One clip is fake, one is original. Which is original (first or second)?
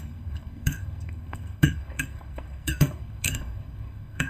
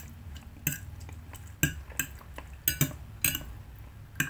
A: second